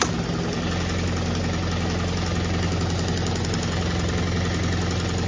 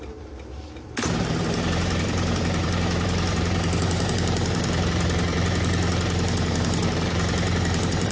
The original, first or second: first